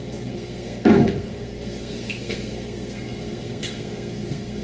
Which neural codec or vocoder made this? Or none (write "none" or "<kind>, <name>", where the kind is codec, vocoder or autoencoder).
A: codec, SNAC